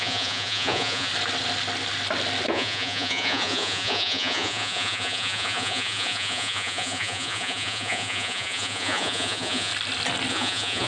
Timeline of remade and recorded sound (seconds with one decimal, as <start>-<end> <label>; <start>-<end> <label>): 0.0-1.1 remade; 1.1-2.5 recorded; 2.5-9.7 remade; 9.7-10.3 recorded; 10.3-10.9 remade